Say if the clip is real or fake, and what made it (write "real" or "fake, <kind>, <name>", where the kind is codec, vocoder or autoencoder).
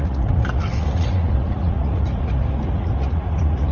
fake, vocoder, Vocos